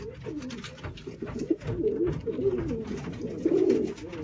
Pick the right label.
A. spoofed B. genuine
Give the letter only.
B